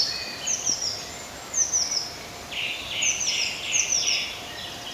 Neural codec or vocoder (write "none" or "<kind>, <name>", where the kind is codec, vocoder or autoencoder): none